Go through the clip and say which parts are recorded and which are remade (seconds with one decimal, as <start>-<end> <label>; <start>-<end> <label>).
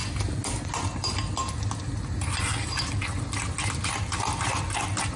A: 0.0-5.2 recorded